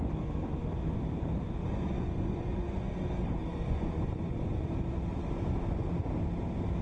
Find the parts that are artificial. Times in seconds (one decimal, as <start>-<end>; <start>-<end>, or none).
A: 1.6-2.9; 3.5-4.7